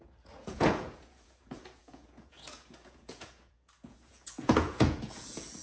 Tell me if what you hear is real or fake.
fake